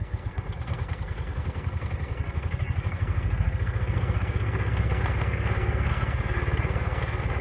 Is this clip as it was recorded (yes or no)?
no